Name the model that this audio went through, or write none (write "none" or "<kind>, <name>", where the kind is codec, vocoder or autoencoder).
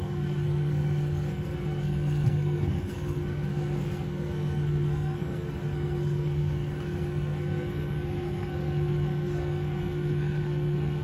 codec, SNAC